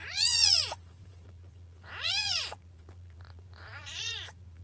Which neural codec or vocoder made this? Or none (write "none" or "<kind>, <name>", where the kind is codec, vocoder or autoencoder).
vocoder, Vocos